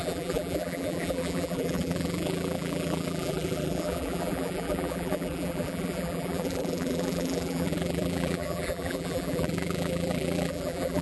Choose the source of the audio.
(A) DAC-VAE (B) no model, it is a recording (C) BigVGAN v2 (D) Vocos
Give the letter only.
C